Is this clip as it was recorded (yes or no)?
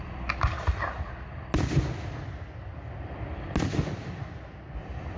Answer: yes